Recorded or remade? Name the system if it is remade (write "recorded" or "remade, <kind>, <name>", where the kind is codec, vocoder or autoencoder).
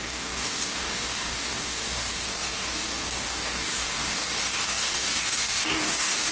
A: remade, codec, DAC